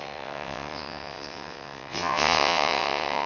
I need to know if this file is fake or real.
fake